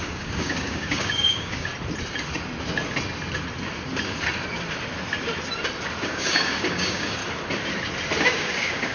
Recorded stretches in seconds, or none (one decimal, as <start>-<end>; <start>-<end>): 1.7-6.0; 7.2-8.2